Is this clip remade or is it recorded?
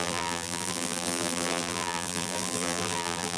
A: remade